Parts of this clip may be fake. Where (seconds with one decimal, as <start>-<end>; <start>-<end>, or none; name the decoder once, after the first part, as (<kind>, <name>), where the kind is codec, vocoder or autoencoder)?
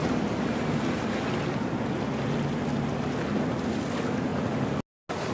none